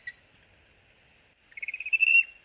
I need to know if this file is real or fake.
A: real